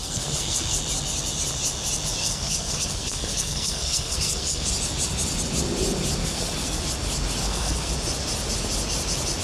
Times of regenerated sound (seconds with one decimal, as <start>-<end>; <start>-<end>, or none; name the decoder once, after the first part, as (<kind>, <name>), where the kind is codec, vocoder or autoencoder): 0.0-0.8 (codec, SNAC); 2.2-4.7; 6.2-6.8; 7.4-7.9